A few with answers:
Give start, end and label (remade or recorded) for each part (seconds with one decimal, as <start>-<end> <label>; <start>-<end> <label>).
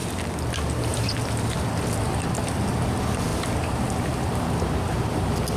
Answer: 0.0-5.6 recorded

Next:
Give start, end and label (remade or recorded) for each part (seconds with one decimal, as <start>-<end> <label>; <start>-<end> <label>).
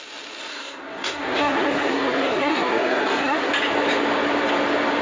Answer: 0.0-0.5 recorded; 0.5-3.5 remade; 3.5-5.0 recorded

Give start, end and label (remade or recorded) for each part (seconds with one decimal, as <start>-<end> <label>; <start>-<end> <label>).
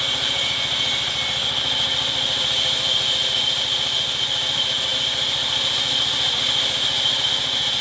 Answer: 0.0-7.8 recorded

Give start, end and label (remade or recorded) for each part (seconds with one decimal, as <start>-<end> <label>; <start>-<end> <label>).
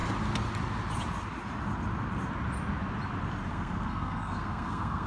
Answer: 0.0-3.5 recorded; 3.5-5.1 remade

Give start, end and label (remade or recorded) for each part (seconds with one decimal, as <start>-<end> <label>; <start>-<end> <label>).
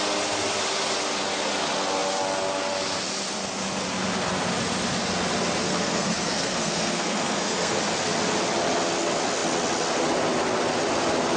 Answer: 0.0-5.7 recorded; 5.7-7.8 remade; 7.8-11.4 recorded